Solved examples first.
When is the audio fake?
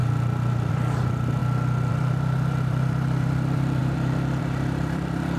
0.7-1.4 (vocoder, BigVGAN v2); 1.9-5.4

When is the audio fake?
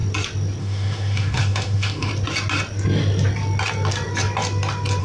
0.6-2.1 (autoencoder, DAC-VAE)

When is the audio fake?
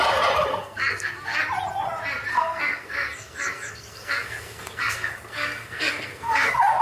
0.5-1.4 (codec, SNAC); 2.3-6.8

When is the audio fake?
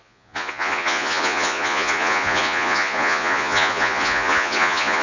0.0-5.0 (vocoder, Vocos)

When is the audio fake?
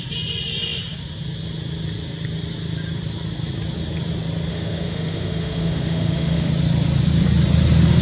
4.5-6.5 (autoencoder, DAC-VAE)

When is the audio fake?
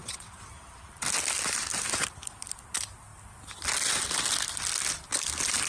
0.0-0.5 (vocoder, WaveNeXt)